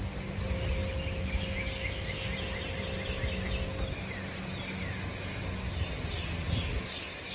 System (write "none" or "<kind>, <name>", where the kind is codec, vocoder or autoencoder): none